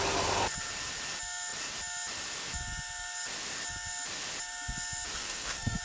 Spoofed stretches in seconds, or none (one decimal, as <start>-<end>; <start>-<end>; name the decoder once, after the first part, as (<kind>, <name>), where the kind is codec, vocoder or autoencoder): 5.2-5.8 (codec, SNAC)